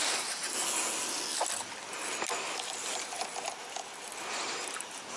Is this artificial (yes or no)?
no